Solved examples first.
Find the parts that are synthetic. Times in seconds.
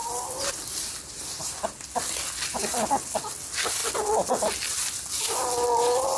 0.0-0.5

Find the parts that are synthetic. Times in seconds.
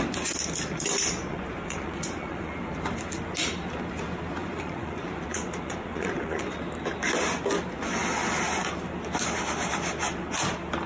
1.3-2.5; 4.4-6.6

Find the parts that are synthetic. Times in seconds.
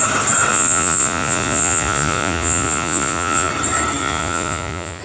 0.5-3.5; 4.0-5.0